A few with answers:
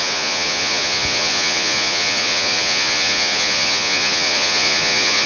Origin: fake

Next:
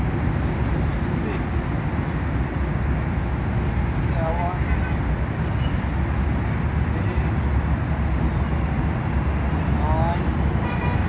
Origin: real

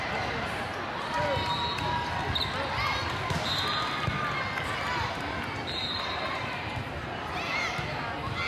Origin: real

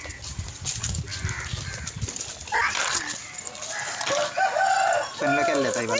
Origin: real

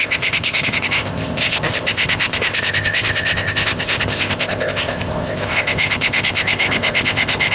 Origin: fake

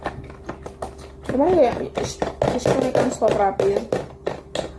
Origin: real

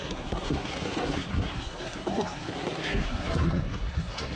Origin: fake